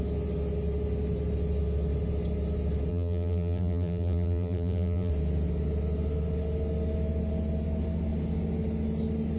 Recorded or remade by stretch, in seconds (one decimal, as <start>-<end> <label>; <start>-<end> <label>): 0.0-2.9 recorded; 2.9-5.1 remade; 5.1-9.4 recorded